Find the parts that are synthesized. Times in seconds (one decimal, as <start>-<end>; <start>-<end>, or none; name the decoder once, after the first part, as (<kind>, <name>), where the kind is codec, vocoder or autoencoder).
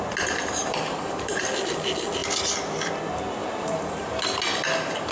0.6-1.4 (vocoder, BigVGAN v2); 3.4-4.2